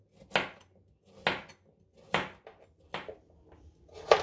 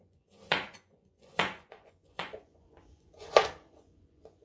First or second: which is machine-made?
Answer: second